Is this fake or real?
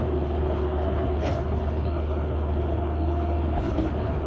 fake